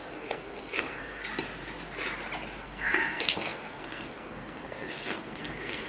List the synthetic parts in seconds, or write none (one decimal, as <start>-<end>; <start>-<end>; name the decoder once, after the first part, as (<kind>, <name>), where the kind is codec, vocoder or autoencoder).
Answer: 0.0-1.2 (codec, SNAC); 2.6-5.9